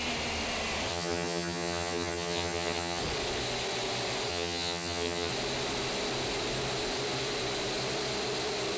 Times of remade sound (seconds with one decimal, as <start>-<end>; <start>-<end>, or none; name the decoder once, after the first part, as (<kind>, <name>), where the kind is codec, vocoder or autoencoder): 0.9-3.0 (vocoder, HiFi-GAN); 4.3-5.3